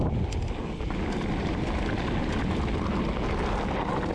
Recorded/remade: recorded